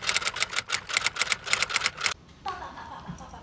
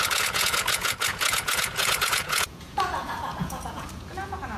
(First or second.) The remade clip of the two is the second